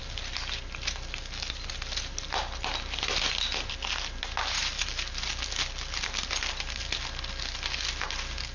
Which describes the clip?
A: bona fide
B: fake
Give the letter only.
A